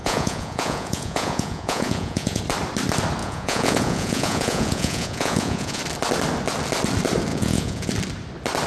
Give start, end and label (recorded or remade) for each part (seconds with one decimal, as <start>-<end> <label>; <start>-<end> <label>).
0.0-2.4 remade; 2.4-3.2 recorded; 3.2-5.8 remade; 5.8-7.3 recorded; 7.3-7.9 remade; 7.9-8.7 recorded